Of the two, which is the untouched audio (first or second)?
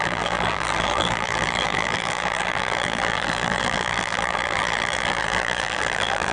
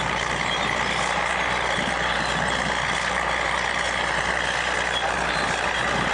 second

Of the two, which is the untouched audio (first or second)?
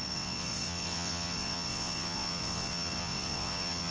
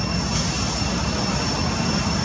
second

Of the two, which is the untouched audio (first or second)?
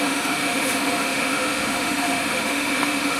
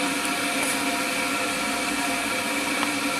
second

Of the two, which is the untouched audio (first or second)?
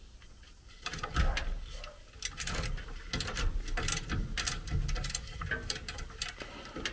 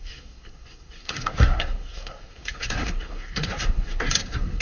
first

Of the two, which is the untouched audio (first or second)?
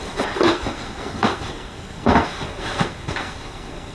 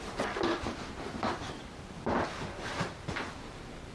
second